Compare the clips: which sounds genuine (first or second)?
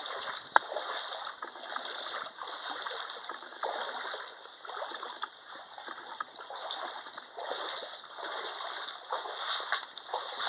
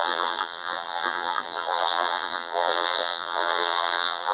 first